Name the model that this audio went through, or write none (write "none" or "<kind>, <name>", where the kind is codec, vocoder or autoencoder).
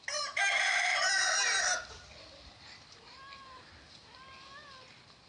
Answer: none